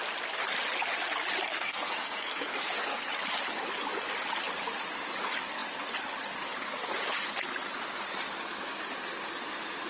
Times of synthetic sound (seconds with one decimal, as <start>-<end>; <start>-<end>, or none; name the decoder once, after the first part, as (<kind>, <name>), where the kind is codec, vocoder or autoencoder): 1.5-3.0 (codec, SNAC)